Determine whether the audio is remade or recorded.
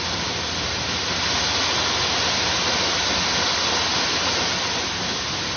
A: recorded